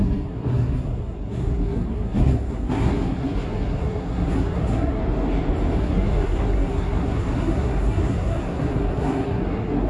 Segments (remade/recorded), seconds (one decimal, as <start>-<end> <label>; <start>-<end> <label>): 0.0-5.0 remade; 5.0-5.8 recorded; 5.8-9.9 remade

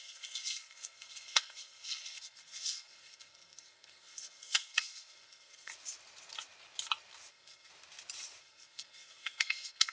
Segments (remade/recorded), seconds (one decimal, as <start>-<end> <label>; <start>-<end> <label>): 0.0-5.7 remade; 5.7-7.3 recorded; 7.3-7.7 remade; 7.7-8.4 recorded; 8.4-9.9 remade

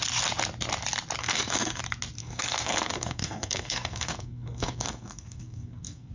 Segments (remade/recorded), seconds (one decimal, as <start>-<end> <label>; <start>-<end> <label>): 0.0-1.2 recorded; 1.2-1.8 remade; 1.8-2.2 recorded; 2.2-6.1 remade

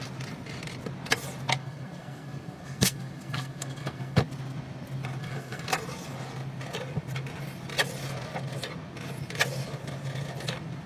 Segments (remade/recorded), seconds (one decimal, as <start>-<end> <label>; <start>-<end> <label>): 0.0-1.6 recorded; 1.6-4.2 remade; 4.2-5.2 recorded; 5.2-5.7 remade; 5.7-10.9 recorded